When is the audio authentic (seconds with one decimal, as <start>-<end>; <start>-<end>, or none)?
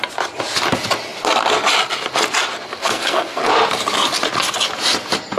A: 0.0-2.8; 3.4-5.4